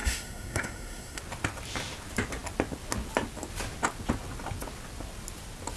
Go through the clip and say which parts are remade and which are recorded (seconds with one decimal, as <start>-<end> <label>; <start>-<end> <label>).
0.0-1.2 remade; 1.2-5.8 recorded